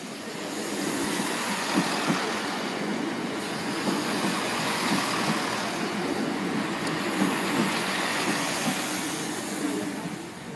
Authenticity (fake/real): fake